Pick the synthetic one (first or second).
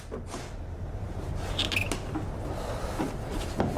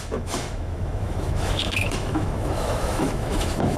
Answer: second